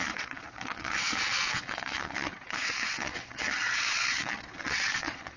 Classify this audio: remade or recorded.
remade